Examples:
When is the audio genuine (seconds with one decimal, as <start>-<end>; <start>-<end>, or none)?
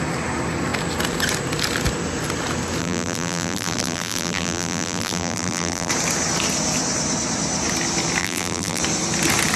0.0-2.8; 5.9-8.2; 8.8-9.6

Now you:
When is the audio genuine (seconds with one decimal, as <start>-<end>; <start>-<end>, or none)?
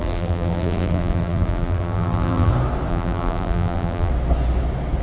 2.5-2.9; 4.1-5.0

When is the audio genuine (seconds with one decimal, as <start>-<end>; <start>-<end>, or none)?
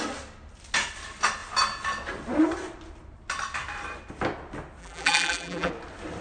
0.0-4.8; 5.7-6.2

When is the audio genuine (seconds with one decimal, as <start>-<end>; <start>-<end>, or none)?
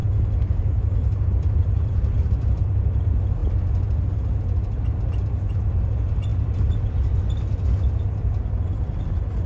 0.6-1.0; 2.6-3.4; 4.0-9.5